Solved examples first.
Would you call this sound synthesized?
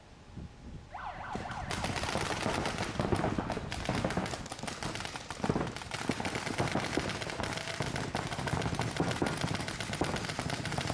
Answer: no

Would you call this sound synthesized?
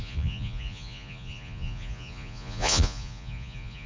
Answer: yes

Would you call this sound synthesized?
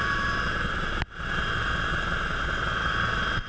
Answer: no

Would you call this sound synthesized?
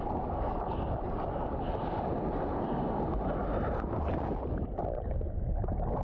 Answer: no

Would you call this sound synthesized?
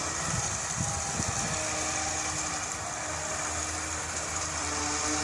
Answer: yes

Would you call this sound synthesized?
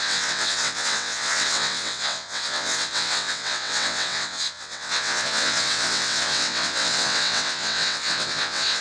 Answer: yes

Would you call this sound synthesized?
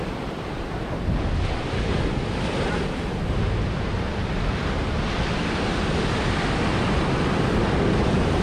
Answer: no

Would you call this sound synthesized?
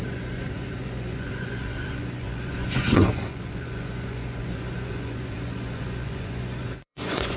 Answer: yes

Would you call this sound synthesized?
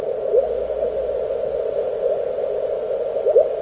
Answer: no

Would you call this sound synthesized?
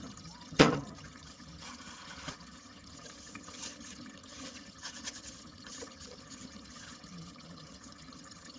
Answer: yes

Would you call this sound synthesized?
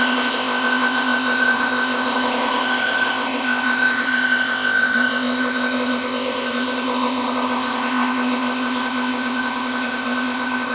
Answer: yes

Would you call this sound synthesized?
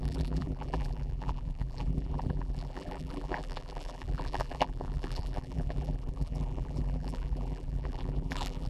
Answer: yes